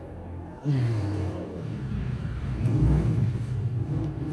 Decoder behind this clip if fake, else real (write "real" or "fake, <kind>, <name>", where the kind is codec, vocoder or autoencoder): fake, codec, DAC